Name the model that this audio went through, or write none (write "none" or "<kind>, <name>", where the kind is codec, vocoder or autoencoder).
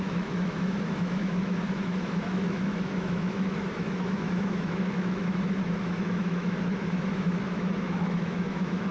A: autoencoder, DAC-VAE